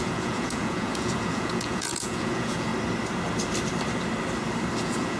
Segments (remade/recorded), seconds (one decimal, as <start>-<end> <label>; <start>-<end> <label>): 0.0-2.7 remade; 2.7-4.8 recorded; 4.8-5.2 remade